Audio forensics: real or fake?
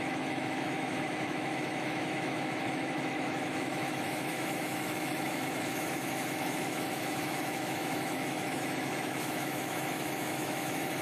fake